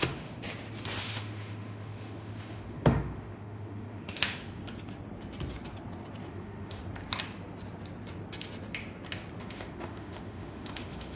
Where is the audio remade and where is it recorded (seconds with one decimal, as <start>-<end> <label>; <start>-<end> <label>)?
0.0-0.4 remade; 0.4-1.0 recorded; 1.0-4.6 remade; 4.6-6.3 recorded; 6.3-6.8 remade; 6.8-9.4 recorded; 9.4-11.2 remade